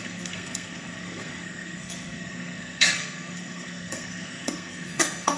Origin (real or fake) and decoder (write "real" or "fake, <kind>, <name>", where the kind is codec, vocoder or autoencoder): fake, codec, SNAC